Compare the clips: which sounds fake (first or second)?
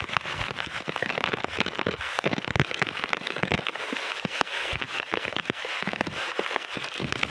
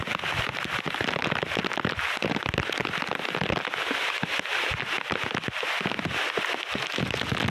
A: first